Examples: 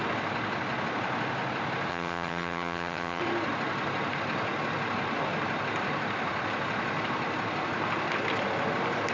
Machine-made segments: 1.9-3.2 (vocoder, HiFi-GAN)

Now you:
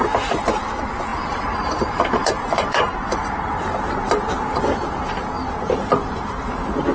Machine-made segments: 1.1-3.3 (vocoder, BigVGAN v2)